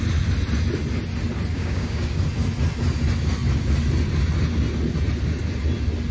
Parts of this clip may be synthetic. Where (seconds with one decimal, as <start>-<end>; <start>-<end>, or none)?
1.5-2.2